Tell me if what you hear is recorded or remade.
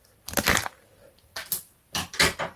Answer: recorded